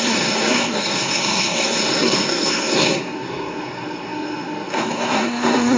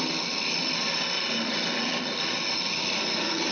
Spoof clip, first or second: first